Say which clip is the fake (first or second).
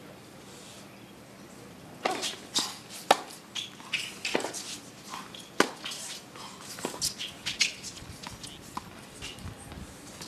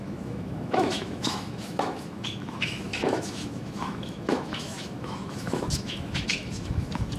second